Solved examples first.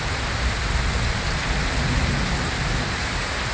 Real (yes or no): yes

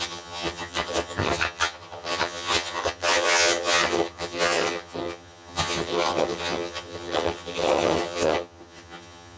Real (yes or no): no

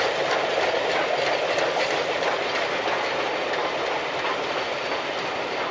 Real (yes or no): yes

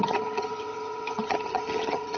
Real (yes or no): no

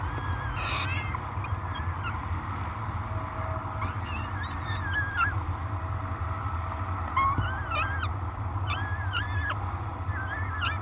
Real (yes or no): yes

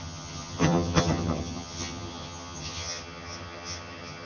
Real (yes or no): no